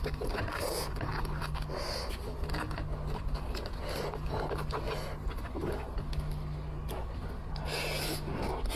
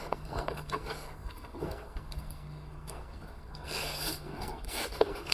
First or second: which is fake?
second